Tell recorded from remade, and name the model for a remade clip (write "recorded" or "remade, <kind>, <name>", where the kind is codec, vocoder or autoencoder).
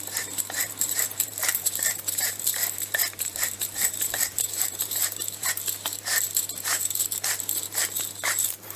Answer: remade, vocoder, BigVGAN v2